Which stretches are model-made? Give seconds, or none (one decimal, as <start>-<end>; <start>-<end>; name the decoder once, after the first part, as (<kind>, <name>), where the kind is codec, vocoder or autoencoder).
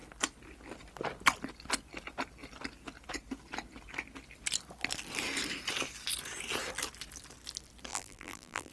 7.9-8.7 (vocoder, BigVGAN v2)